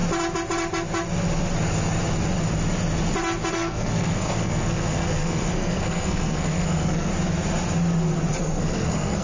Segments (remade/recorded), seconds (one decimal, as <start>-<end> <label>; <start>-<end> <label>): 0.0-3.5 recorded; 3.5-7.1 remade; 7.1-8.4 recorded; 8.4-9.2 remade